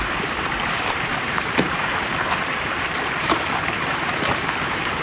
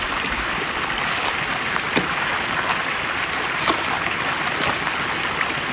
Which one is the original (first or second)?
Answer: second